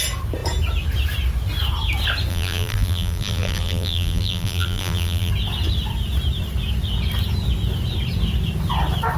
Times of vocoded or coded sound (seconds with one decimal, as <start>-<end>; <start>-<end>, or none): 2.3-5.3